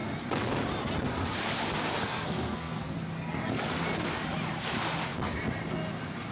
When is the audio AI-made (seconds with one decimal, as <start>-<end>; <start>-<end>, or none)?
2.0-2.9